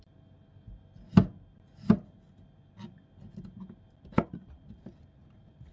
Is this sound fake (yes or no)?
no